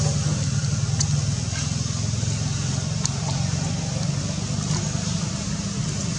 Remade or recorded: recorded